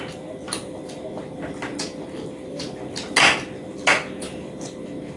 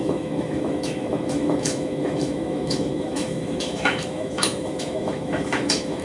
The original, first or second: first